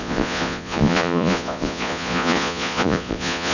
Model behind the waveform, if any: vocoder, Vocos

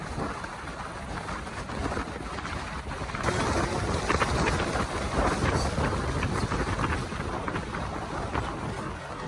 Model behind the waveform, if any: none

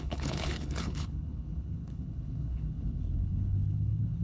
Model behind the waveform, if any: codec, HILCodec